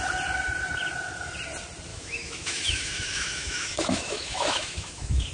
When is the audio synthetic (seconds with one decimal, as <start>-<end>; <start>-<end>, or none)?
1.9-5.3